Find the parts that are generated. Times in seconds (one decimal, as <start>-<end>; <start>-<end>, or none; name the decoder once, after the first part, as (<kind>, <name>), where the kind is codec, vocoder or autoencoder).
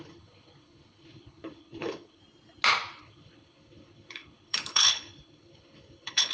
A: 0.0-2.2 (codec, HILCodec); 3.0-6.3